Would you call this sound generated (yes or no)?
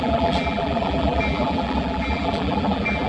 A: yes